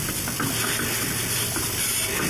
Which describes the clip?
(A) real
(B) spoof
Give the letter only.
A